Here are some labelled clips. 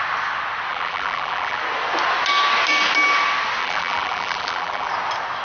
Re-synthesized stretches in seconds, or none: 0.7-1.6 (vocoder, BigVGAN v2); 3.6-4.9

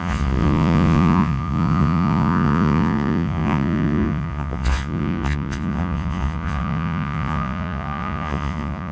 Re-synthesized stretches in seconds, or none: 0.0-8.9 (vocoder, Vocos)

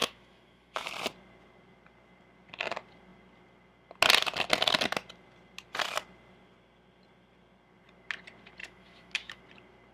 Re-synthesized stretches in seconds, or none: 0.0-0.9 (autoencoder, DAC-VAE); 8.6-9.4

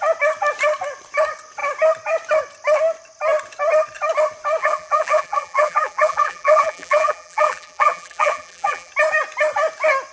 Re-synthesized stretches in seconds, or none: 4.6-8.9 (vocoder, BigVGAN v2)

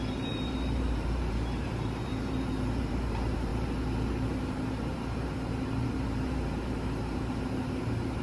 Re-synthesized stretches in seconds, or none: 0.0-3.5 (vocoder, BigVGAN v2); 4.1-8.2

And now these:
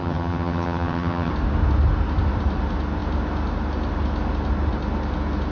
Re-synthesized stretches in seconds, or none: 0.0-1.3 (vocoder, HiFi-GAN)